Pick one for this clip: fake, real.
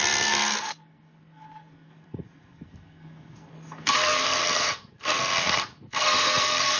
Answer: fake